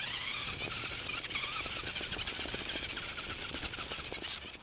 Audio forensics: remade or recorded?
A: recorded